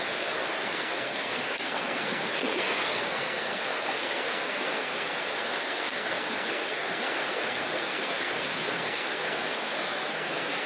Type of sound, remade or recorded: remade